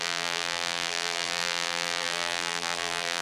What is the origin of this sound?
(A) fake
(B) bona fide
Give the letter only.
A